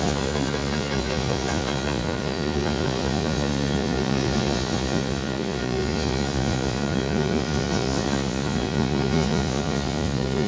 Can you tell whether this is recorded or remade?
remade